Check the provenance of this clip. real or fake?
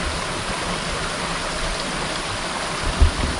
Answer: real